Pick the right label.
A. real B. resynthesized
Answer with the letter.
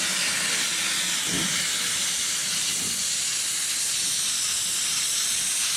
A